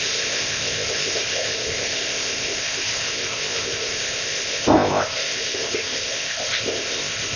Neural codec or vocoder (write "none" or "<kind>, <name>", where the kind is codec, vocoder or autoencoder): codec, ZipCodec